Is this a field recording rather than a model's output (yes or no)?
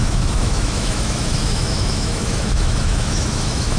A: no